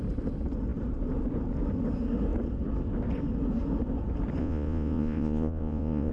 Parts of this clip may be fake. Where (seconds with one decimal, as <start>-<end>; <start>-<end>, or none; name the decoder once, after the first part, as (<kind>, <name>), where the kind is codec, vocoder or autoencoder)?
4.4-6.1 (vocoder, Vocos)